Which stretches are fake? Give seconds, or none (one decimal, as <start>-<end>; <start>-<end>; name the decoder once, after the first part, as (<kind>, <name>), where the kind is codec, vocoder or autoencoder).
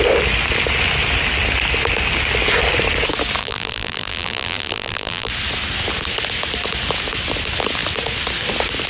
3.4-5.3 (vocoder, BigVGAN v2)